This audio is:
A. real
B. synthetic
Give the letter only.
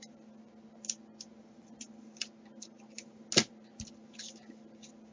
A